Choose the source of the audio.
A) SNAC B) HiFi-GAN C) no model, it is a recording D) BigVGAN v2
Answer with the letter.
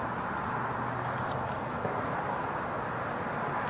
C